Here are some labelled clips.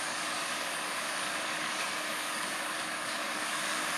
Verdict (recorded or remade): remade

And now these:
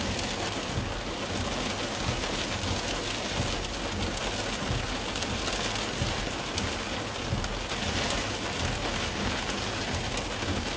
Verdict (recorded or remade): recorded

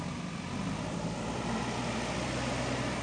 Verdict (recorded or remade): remade